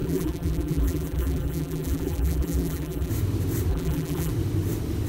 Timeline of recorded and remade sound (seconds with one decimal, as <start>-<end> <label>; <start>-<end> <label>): 0.0-3.1 remade; 3.1-3.7 recorded; 3.7-4.3 remade; 4.3-5.1 recorded